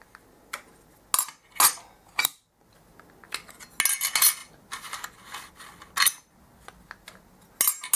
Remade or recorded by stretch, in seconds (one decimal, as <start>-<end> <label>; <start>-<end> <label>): 0.0-8.0 recorded